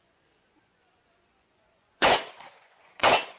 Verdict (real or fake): fake